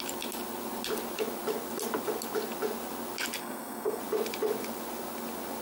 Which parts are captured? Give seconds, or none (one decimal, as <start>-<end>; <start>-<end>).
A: 0.0-3.4; 4.0-5.6